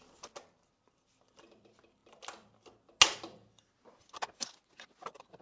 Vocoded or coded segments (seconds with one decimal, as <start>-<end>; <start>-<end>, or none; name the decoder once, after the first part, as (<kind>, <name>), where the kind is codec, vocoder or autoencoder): none